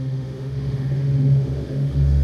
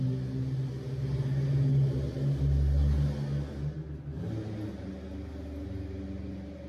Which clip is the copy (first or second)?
first